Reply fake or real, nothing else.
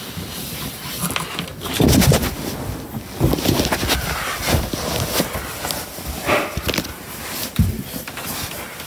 real